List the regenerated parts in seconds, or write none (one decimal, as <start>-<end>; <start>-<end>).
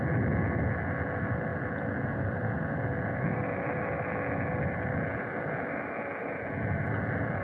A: none